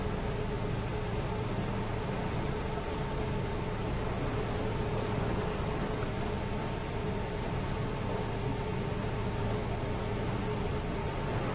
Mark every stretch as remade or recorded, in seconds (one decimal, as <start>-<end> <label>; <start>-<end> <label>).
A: 0.0-11.5 recorded